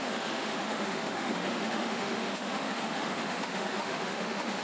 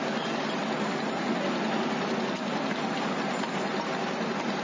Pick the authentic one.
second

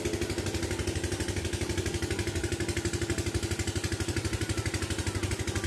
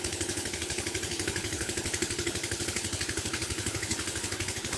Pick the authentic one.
first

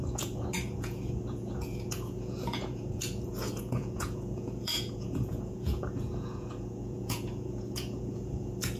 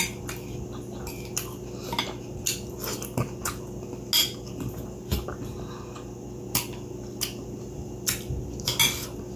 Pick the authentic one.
second